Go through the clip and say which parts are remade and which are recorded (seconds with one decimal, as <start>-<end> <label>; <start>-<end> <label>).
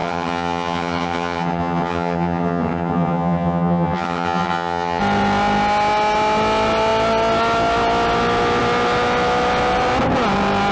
0.0-5.0 remade; 5.0-10.7 recorded